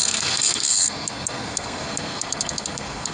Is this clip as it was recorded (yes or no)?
no